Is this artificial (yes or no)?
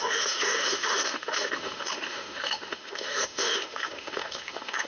yes